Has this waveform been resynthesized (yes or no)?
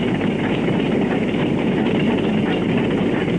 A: no